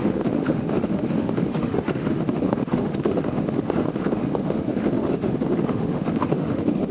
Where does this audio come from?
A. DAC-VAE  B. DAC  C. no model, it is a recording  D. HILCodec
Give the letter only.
A